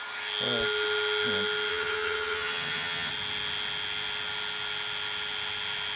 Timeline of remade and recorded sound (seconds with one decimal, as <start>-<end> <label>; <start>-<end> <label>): 0.0-1.7 recorded; 1.7-3.1 remade; 3.1-6.0 recorded